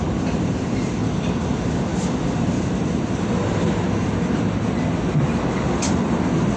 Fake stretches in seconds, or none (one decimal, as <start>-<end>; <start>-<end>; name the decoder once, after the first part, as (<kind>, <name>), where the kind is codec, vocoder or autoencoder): none